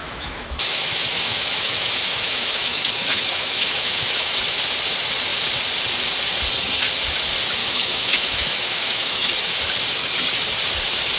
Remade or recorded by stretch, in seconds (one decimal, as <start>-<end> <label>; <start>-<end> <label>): 0.0-4.4 remade; 4.4-7.6 recorded; 7.6-9.3 remade; 9.3-11.2 recorded